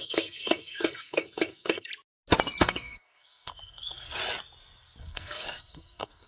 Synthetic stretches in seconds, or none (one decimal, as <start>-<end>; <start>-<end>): 0.0-1.9; 2.6-4.2; 5.0-6.3